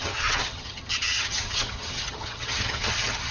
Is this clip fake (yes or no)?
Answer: yes